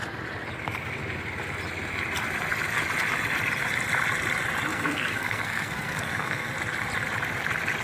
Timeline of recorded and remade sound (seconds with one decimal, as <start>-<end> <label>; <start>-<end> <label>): 0.0-4.7 recorded; 4.7-6.5 remade; 6.5-7.8 recorded